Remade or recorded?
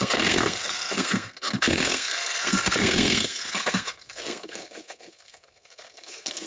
remade